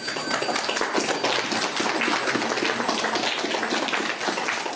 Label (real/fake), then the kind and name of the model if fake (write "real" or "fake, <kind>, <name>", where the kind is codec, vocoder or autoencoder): real